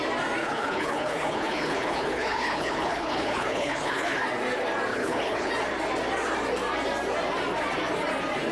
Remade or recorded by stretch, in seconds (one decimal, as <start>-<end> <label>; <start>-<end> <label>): 0.0-0.4 recorded; 0.4-4.2 remade; 4.2-4.9 recorded; 4.9-5.5 remade; 5.5-8.5 recorded

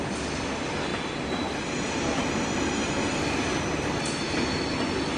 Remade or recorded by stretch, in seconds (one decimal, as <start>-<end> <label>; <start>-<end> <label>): 0.0-5.2 recorded

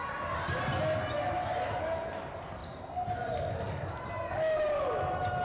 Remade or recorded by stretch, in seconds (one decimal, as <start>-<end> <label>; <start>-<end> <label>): 0.0-5.4 recorded

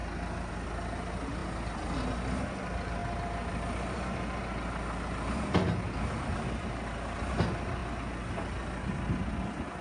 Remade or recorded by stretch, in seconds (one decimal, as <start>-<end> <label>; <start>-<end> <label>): 0.0-9.8 recorded

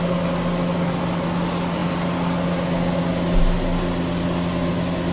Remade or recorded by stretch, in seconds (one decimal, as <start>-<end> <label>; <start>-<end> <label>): 0.0-5.1 recorded

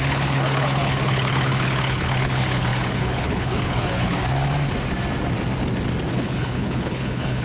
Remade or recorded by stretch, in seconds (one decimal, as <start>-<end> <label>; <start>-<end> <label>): 0.0-4.2 remade; 4.2-6.1 recorded; 6.1-7.4 remade

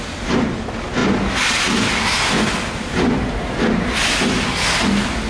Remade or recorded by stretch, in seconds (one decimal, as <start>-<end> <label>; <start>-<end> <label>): 0.0-5.3 recorded